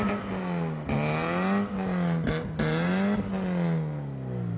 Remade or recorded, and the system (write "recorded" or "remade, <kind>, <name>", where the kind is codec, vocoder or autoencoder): recorded